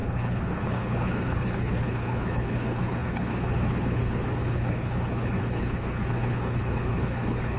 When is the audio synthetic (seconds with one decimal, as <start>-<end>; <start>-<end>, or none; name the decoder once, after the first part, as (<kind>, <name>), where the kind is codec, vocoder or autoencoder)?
0.0-7.6 (codec, HILCodec)